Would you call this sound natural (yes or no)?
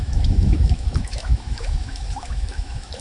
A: no